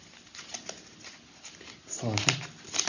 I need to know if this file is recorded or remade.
recorded